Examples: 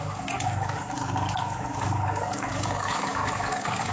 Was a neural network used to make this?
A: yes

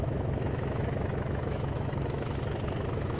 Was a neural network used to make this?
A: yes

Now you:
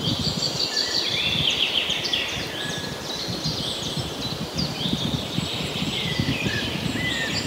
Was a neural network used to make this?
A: no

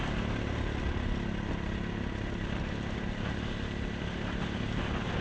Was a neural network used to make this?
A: no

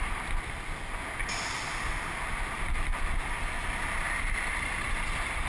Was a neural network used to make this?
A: no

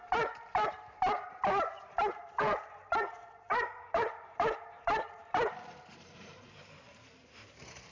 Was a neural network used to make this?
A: yes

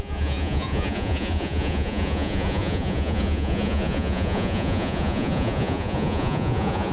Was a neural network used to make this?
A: yes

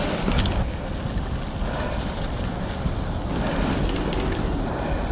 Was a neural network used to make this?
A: no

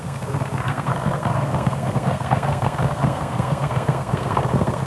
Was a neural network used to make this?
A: yes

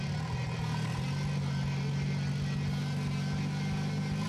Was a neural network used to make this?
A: no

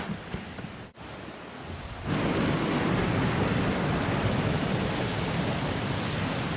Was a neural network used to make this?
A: no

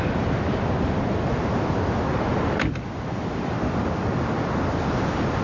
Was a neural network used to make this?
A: no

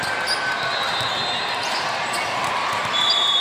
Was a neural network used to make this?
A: no